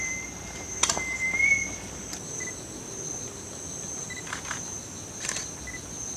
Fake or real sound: fake